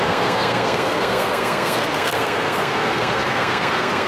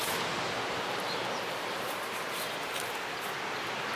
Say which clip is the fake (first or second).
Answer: first